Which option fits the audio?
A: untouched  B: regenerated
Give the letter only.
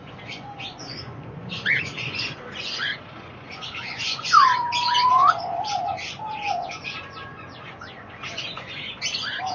B